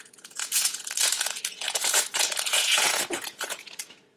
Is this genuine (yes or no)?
no